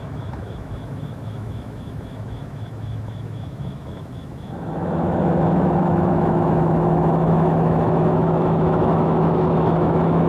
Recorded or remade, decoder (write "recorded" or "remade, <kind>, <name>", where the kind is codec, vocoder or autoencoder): remade, autoencoder, DAC-VAE